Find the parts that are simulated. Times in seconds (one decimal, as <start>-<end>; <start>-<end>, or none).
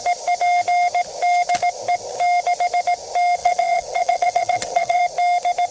3.4-5.0